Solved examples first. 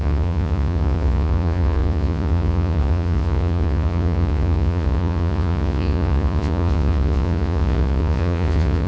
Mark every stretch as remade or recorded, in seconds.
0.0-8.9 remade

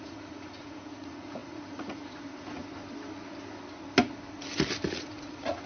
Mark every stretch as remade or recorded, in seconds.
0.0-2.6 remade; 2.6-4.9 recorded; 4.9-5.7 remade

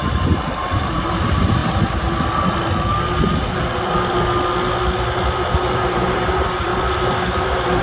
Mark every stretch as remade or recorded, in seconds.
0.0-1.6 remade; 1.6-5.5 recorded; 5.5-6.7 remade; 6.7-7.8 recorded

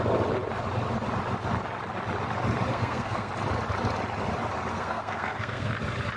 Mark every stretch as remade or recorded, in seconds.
0.0-2.7 recorded; 2.7-3.3 remade; 3.3-4.7 recorded; 4.7-5.7 remade; 5.7-6.2 recorded